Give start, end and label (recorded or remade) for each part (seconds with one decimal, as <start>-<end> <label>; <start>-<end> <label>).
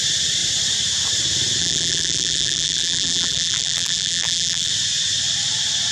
0.0-1.6 recorded; 1.6-4.7 remade; 4.7-5.9 recorded